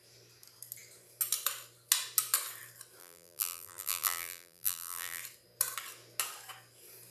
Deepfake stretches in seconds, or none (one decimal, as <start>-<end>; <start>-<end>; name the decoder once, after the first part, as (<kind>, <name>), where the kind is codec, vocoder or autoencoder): 3.0-5.2 (vocoder, BigVGAN v2)